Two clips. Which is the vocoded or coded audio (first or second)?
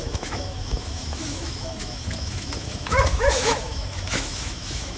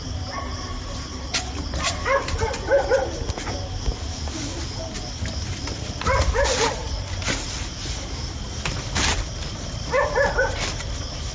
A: first